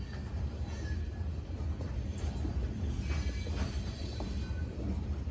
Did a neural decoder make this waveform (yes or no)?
no